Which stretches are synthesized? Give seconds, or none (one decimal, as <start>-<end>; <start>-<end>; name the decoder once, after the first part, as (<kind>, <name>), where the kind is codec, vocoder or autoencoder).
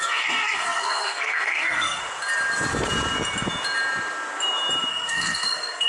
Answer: 0.0-2.0 (codec, SNAC); 4.9-5.9